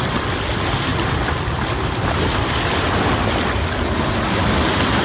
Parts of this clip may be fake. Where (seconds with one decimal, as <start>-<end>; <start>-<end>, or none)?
none

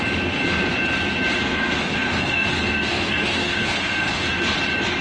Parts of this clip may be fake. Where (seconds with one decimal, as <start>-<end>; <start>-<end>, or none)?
1.4-4.4

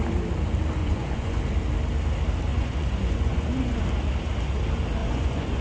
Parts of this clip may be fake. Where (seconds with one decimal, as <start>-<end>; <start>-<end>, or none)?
0.8-1.4; 2.5-3.8; 5.0-5.6